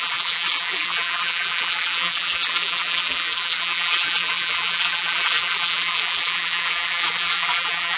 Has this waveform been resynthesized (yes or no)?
yes